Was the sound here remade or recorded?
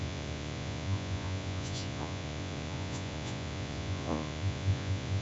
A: remade